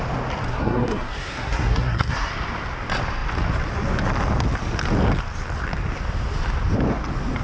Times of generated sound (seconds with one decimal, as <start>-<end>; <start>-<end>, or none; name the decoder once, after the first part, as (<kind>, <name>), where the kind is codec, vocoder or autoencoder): 0.5-2.3 (codec, SNAC)

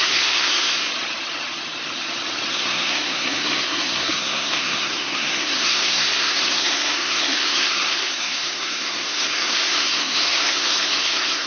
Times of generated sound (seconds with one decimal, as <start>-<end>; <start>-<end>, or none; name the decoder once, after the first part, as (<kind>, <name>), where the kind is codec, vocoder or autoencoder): 0.0-0.9 (codec, SNAC); 2.5-11.5